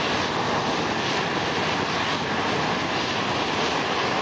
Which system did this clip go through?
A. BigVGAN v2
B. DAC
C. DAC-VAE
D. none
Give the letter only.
D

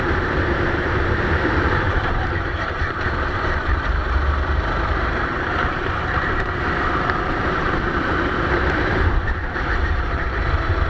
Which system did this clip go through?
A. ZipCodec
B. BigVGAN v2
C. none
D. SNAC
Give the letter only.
B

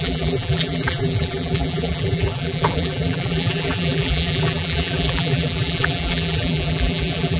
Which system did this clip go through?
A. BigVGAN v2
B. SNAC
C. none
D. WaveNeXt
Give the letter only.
A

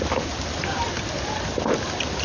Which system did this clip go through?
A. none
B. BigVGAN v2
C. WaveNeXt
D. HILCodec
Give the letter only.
A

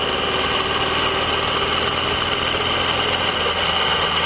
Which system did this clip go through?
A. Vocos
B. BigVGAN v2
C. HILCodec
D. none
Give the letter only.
D